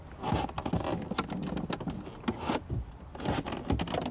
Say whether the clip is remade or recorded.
recorded